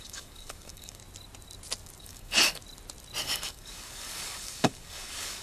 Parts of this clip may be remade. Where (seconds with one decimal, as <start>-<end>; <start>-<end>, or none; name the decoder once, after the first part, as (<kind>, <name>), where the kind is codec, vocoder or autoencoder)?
0.0-1.0 (codec, DAC); 2.0-2.6; 3.2-5.4